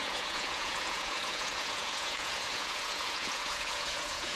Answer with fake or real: fake